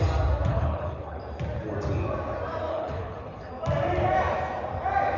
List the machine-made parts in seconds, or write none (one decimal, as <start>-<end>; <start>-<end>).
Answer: 0.5-1.2; 2.7-3.5